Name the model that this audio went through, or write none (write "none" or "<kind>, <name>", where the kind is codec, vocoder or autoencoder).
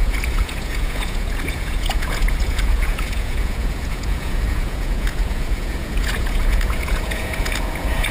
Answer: vocoder, Vocos